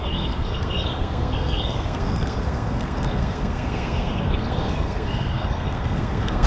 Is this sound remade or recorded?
remade